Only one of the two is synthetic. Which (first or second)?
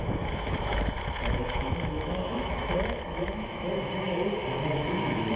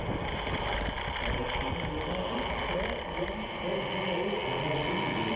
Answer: first